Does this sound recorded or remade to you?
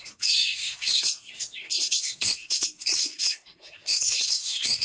remade